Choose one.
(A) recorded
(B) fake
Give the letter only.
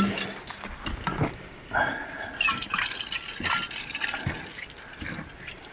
A